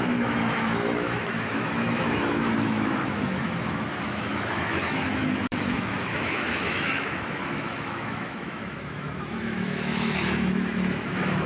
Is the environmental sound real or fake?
fake